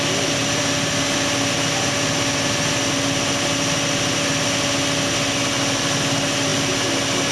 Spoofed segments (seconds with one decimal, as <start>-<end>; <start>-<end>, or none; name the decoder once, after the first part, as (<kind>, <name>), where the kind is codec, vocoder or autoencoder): none